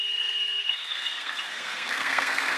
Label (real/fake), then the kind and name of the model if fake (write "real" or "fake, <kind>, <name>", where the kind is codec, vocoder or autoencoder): fake, codec, SNAC